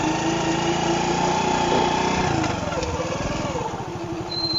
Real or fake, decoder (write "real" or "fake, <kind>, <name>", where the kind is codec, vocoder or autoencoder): real